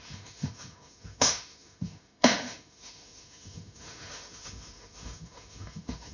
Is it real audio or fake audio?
fake